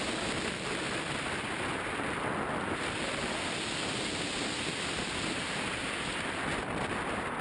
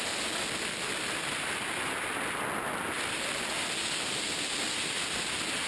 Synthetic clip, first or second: first